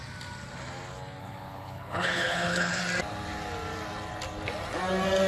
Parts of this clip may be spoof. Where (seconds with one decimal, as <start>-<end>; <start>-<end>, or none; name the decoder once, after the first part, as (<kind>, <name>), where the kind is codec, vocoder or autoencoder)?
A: 1.2-2.8 (codec, HILCodec)